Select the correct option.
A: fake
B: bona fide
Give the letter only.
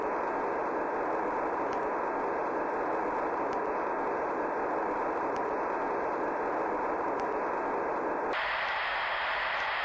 B